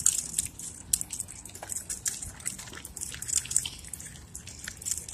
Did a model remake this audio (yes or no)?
no